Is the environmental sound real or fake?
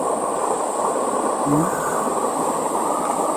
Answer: real